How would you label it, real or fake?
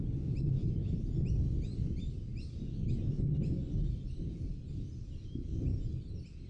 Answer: real